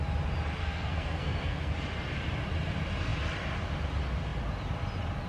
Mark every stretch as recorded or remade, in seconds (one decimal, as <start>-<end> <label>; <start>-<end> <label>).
0.0-0.6 recorded; 0.6-1.7 remade; 1.7-5.3 recorded